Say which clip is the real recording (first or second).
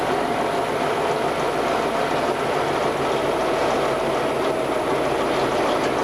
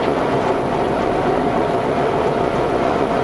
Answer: first